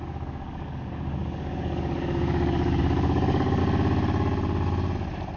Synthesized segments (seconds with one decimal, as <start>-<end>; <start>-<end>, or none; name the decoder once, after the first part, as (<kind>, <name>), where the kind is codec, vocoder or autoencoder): 0.0-3.6 (codec, DAC)